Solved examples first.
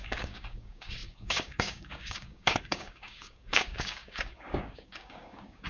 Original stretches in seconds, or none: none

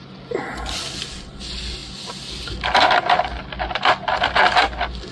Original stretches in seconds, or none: 0.0-5.1

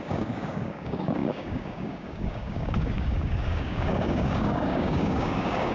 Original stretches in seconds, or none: none